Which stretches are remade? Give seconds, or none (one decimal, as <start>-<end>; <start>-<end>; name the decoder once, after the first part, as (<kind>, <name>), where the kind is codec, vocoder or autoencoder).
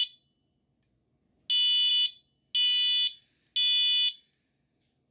none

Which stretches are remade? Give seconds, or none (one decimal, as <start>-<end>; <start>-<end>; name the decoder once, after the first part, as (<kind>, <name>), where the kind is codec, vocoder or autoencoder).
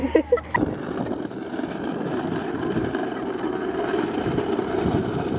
2.1-5.4 (vocoder, BigVGAN v2)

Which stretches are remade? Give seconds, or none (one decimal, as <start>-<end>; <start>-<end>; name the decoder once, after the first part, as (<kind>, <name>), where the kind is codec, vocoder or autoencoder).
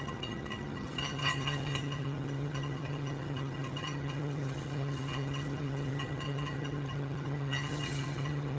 0.0-8.6 (vocoder, HiFi-GAN)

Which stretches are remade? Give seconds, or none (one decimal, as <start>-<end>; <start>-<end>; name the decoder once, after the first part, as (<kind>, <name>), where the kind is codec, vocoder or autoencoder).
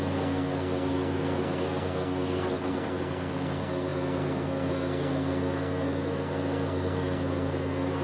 0.0-8.0 (codec, SNAC)